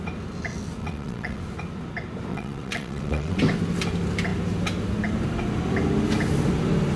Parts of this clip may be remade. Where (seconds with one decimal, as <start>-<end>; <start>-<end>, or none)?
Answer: 0.8-1.4; 2.3-3.4